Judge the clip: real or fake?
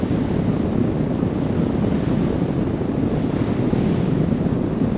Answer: real